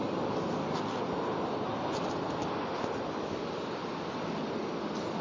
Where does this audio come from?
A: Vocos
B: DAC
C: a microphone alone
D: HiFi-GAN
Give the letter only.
C